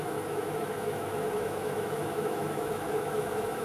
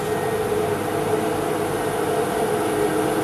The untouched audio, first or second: second